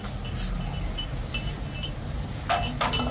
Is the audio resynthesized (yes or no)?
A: no